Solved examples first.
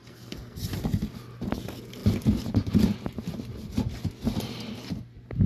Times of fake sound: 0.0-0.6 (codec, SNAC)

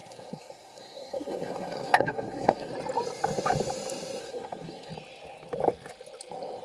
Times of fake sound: 0.0-2.7 (codec, SNAC); 4.2-4.9

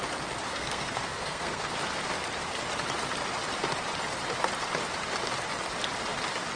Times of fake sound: 0.5-1.6 (codec, SNAC)